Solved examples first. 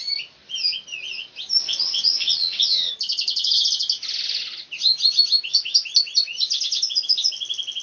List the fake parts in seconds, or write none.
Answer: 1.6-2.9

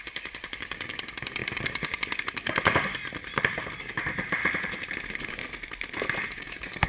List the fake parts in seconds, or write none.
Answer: 0.0-2.9; 3.8-4.4; 5.0-5.4; 6.3-6.9

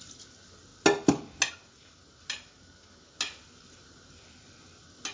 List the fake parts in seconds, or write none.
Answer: none

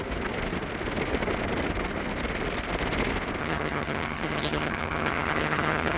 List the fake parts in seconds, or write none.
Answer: 3.4-6.0

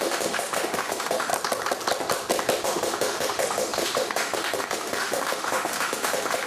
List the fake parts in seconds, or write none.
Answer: 0.0-1.3; 2.6-6.5